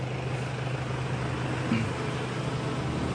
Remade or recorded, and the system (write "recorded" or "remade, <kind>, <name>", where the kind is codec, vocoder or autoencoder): recorded